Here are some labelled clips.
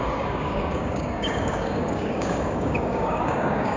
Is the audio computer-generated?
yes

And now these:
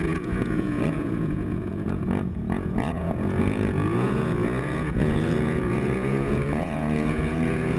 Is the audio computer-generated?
yes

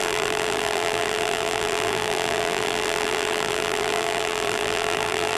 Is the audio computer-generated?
yes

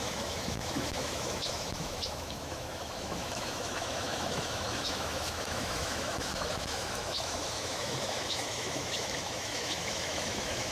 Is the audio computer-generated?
yes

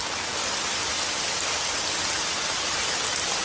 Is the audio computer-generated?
no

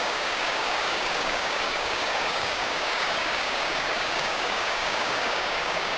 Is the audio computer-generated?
yes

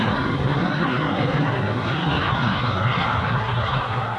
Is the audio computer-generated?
yes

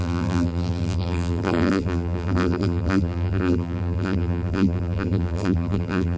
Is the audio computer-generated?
yes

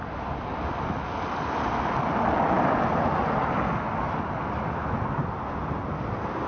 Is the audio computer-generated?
no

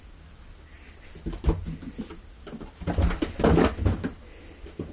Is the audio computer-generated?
no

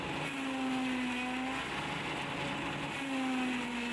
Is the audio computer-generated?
no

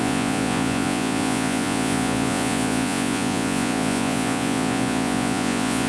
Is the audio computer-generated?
yes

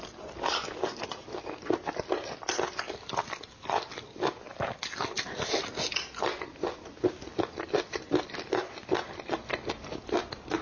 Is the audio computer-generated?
no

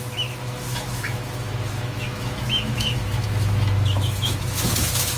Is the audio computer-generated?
yes